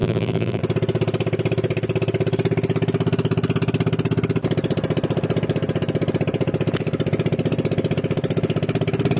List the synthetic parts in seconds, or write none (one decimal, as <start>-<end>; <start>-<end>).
0.0-0.6